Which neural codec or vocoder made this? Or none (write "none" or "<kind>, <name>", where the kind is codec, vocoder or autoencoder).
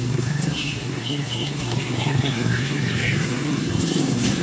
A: codec, SNAC